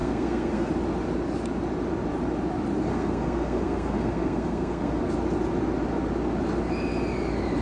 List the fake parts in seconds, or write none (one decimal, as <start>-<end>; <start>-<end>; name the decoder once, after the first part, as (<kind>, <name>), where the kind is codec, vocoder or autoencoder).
0.0-0.7 (codec, SNAC); 2.9-5.0